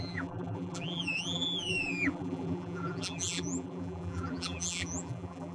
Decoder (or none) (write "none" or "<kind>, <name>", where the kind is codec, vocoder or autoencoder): vocoder, BigVGAN v2